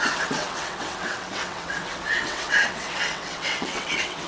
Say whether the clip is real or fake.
fake